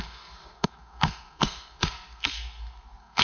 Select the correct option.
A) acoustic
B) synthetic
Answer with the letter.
B